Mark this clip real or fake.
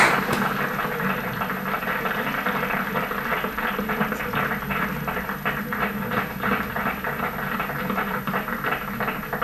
real